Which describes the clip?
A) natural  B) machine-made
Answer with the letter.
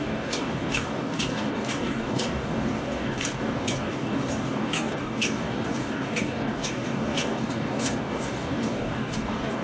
B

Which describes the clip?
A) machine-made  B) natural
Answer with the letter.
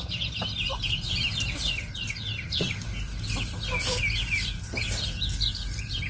B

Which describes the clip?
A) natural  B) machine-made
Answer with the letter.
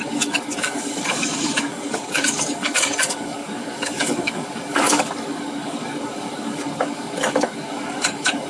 B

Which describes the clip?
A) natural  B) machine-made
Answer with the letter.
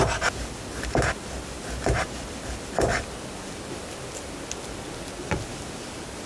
A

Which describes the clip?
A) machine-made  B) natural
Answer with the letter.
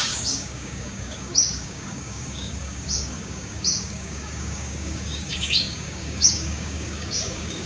A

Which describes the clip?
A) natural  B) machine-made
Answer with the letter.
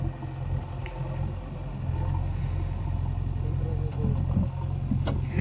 A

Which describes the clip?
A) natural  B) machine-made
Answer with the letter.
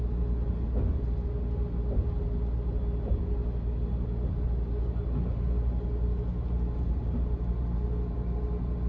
A